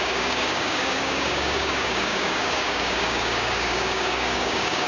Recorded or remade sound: remade